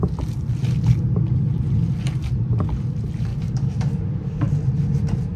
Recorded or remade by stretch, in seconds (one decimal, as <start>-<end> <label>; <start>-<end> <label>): 0.0-3.3 recorded; 3.3-4.5 remade; 4.5-5.4 recorded